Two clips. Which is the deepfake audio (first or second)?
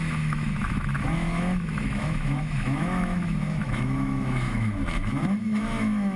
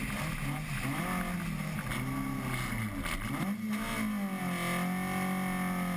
first